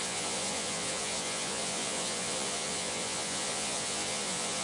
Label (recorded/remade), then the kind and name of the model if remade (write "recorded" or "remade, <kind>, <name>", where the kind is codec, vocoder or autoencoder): remade, vocoder, Vocos